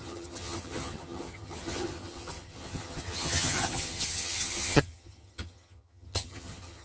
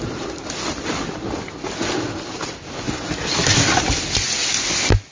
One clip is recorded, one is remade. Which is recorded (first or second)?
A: second